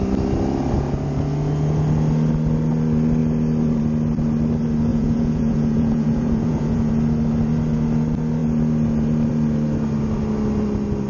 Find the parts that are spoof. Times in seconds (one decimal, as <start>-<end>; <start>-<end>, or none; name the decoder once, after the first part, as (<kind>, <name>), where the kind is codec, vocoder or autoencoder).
4.9-6.9 (vocoder, Vocos)